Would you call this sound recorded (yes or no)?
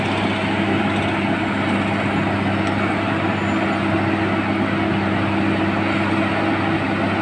yes